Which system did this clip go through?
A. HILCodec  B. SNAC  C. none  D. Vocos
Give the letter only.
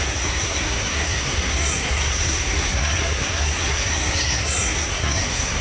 B